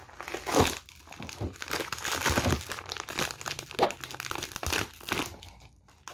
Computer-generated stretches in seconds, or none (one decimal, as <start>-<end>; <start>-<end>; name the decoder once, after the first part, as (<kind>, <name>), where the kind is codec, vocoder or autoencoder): none